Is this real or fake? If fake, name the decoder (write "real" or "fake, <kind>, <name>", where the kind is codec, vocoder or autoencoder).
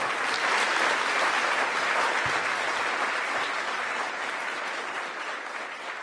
real